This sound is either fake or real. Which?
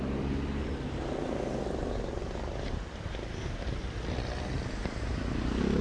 real